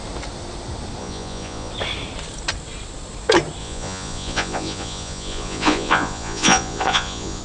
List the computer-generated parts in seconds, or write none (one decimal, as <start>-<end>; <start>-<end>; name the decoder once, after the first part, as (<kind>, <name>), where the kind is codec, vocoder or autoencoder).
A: 1.0-1.7 (vocoder, Vocos); 3.6-7.4